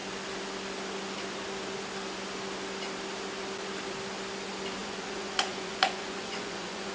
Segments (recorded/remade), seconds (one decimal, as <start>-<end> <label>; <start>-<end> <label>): 0.0-4.8 recorded; 4.8-6.9 remade